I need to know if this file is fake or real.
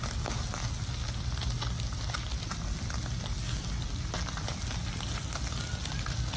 real